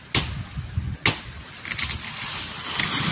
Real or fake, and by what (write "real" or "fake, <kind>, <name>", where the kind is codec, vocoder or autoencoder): real